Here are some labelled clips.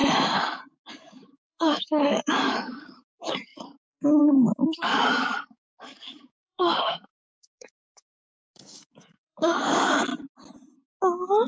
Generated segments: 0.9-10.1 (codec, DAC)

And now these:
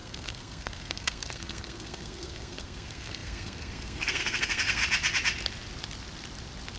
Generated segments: 0.0-4.8 (codec, SNAC)

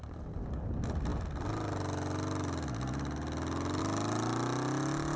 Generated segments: none

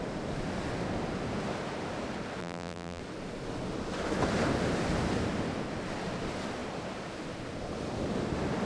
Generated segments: 2.4-3.0 (vocoder, BigVGAN v2)